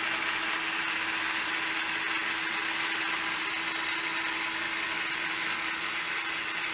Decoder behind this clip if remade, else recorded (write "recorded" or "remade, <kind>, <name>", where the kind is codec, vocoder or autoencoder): recorded